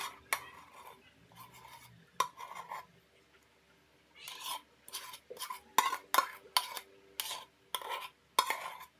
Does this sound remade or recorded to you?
recorded